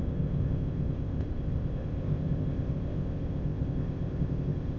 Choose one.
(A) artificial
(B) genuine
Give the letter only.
A